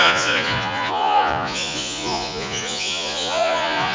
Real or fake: fake